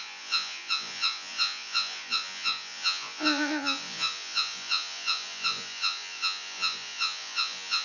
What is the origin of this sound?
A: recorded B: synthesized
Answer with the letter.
B